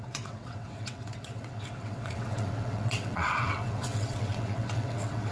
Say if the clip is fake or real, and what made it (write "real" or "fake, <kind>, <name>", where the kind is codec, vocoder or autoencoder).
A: fake, vocoder, WaveNeXt